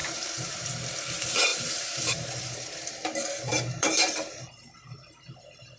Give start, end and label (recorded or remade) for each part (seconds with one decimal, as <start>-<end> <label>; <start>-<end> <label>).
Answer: 0.0-0.7 remade; 0.7-1.5 recorded; 1.5-2.9 remade; 2.9-3.5 recorded; 3.5-4.3 remade; 4.3-5.8 recorded